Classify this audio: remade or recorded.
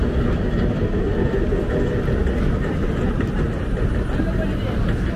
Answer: recorded